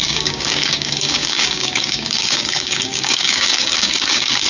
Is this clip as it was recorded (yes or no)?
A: no